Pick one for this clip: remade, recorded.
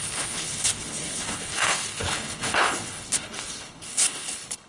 remade